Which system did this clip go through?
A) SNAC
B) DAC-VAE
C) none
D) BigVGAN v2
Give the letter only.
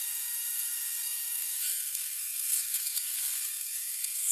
A